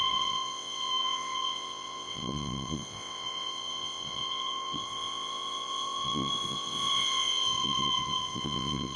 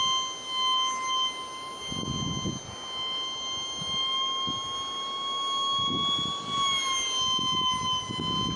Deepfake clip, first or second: first